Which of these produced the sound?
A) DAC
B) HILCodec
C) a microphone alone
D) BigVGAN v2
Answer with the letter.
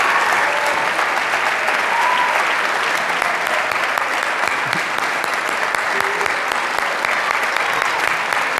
C